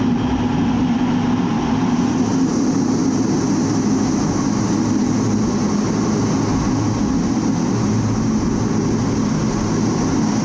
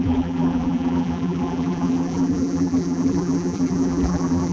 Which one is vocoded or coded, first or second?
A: second